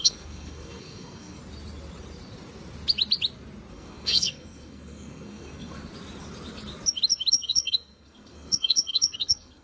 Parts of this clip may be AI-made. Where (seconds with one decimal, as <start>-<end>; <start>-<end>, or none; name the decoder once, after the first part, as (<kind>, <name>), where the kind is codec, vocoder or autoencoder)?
0.0-1.4 (codec, SNAC); 3.7-5.8; 7.3-9.6

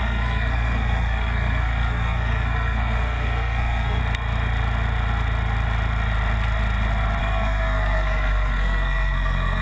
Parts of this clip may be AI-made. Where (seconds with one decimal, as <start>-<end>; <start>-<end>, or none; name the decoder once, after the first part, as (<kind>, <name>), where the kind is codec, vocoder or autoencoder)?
0.0-4.0 (codec, SNAC); 7.2-9.6

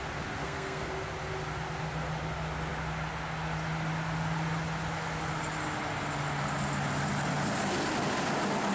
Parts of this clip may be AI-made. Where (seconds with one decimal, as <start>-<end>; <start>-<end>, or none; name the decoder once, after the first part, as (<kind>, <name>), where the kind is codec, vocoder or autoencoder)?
0.4-0.9 (codec, SNAC)

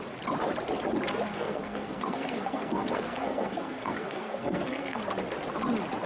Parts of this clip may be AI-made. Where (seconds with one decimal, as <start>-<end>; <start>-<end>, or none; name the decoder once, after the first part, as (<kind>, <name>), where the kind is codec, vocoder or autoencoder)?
1.3-5.0 (codec, SNAC)

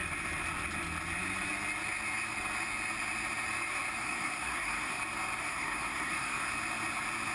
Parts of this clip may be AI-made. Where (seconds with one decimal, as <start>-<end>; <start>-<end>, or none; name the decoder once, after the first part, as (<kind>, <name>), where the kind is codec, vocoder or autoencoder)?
4.0-5.0 (codec, SNAC); 5.4-6.5

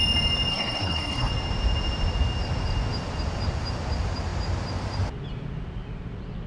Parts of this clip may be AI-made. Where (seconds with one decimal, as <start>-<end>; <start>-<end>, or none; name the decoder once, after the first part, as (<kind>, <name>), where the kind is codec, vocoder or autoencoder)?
0.5-1.3 (codec, SNAC)

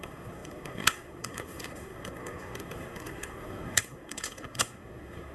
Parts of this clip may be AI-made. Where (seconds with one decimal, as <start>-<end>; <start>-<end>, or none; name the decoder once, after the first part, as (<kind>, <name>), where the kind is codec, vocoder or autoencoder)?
0.0-5.3 (codec, SNAC)

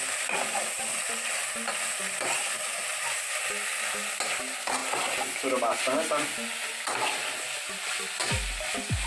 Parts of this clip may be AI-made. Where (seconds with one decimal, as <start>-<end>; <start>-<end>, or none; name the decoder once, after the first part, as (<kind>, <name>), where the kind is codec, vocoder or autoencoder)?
none